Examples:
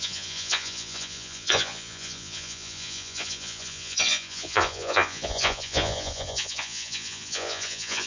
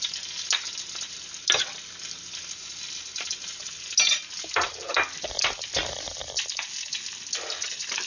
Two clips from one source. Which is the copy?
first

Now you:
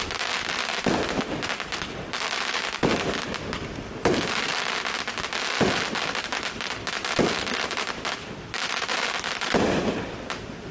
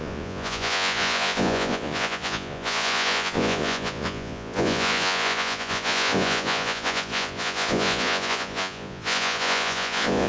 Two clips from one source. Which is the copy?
second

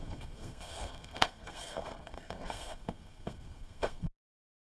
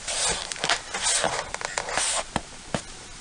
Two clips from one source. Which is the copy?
first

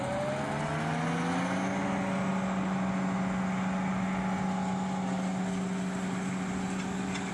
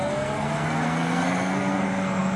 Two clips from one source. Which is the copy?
second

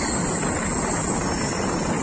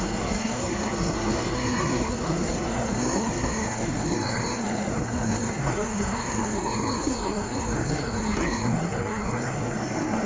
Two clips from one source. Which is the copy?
second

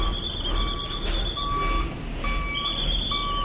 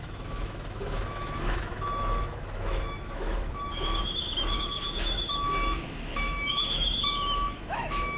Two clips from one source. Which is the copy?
second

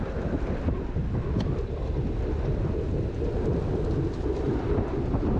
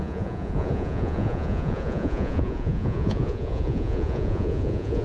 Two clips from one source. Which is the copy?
second